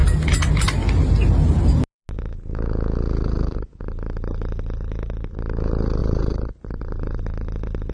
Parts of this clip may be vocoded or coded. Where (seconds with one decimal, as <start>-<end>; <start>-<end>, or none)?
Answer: 6.0-7.2

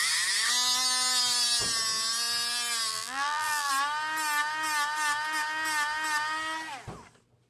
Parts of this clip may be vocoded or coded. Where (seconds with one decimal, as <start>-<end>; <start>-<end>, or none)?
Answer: 2.9-3.7

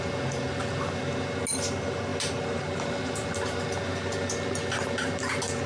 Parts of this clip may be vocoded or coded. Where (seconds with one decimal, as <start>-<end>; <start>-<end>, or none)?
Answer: none

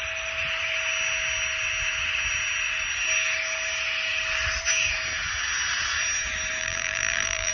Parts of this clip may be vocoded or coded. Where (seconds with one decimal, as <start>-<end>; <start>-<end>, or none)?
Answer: 6.6-7.5

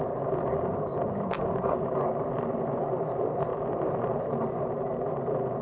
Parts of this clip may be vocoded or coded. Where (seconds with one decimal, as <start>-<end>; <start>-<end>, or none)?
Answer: 0.9-1.4; 3.5-4.3

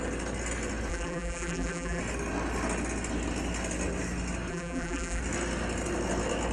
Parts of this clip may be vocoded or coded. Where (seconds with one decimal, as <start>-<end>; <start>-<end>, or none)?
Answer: 0.9-2.0; 4.5-5.2

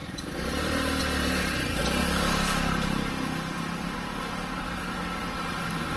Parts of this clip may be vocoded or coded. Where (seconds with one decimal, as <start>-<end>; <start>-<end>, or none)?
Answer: 0.0-1.8; 5.4-6.0